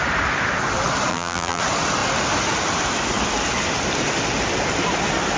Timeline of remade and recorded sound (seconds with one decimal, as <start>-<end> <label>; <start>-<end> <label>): 0.0-1.1 recorded; 1.1-1.6 remade; 1.6-5.4 recorded